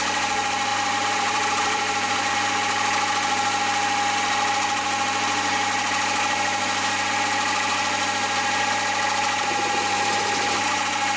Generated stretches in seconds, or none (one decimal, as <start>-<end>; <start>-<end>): 0.7-2.3